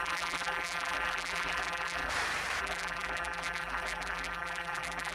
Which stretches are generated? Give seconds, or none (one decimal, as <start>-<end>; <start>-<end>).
0.0-2.1; 2.6-5.1